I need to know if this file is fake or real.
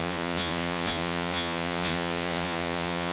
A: fake